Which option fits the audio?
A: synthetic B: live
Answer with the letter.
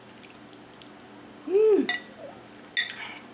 B